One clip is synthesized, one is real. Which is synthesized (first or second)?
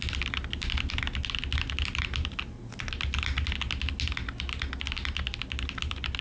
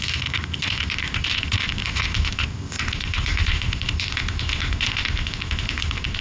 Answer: second